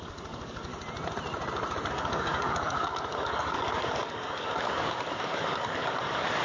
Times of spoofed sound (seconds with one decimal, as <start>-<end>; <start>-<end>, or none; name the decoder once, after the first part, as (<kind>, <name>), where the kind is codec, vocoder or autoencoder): 0.0-0.7 (codec, DAC); 1.9-6.4